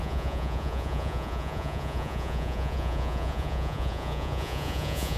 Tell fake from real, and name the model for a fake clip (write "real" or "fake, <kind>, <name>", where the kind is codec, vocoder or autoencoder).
fake, vocoder, Vocos